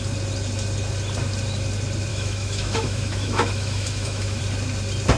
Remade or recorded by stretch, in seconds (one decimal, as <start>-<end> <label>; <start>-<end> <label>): 0.0-2.1 recorded; 2.1-4.4 remade; 4.4-5.2 recorded